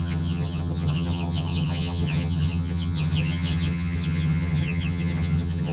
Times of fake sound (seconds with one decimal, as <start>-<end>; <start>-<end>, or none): 0.0-5.7

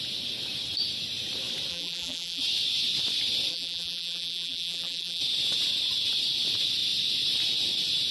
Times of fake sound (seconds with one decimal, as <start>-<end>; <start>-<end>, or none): 1.7-2.4; 3.5-5.2

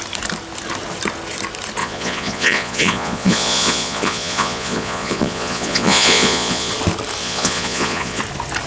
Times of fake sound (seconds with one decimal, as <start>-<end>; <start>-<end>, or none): 1.8-6.7; 7.2-8.2